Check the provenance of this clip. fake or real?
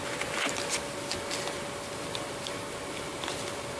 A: real